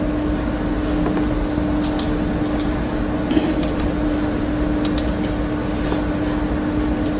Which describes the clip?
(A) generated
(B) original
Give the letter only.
B